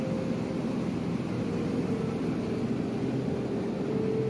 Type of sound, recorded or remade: recorded